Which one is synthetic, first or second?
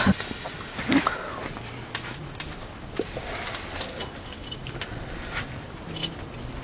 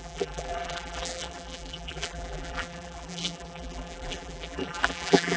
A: second